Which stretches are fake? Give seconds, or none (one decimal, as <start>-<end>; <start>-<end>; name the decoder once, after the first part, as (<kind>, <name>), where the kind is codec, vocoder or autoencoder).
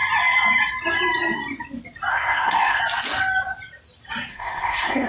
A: 2.1-2.8 (codec, SNAC); 4.3-5.1